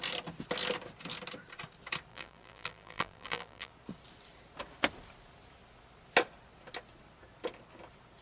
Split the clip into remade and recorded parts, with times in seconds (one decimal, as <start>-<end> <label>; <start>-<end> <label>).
0.0-2.1 recorded; 2.1-3.7 remade; 3.7-8.2 recorded